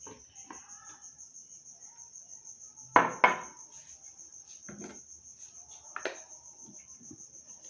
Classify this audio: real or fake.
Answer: real